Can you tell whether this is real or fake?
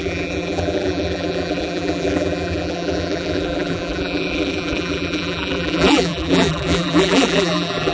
fake